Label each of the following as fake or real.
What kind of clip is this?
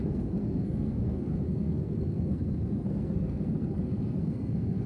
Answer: fake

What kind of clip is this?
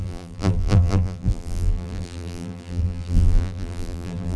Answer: fake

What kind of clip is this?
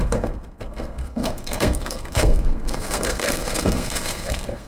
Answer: fake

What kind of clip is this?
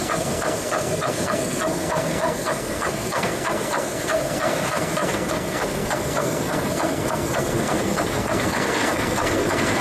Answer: fake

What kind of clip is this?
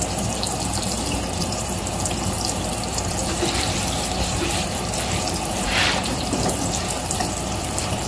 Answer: fake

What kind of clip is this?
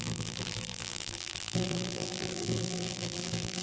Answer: fake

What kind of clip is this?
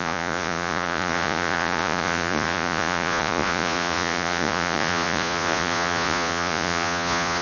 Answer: fake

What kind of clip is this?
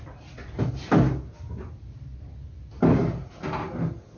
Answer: real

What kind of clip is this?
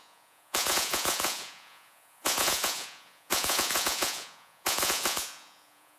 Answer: fake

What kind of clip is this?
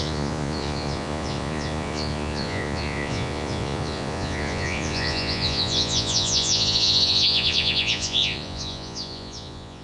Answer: fake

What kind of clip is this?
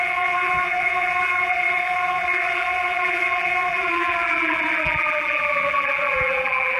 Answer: fake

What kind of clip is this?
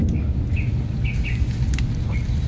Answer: real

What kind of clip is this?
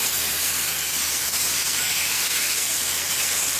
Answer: fake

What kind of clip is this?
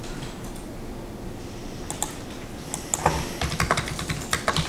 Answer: real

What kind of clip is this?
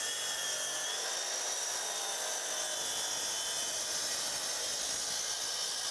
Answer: real